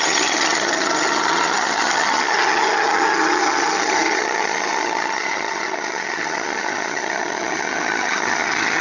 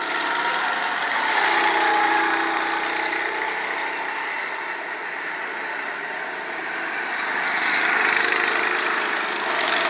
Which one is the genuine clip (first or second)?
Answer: second